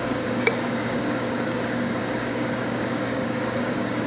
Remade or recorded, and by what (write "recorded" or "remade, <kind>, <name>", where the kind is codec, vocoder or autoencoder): remade, codec, DAC